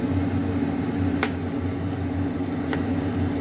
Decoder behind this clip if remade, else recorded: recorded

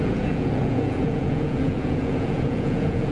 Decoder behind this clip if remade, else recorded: remade, vocoder, Vocos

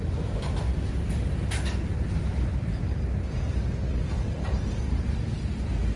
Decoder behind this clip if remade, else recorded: recorded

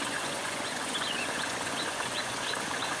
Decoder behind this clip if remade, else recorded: remade, vocoder, Vocos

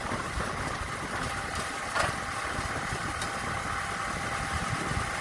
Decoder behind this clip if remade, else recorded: recorded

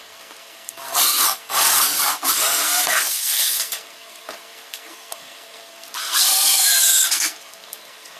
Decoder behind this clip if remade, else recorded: remade, codec, SNAC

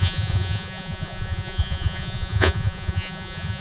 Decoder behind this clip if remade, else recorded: remade, vocoder, Vocos